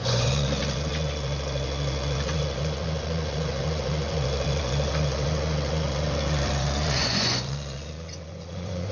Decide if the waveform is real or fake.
fake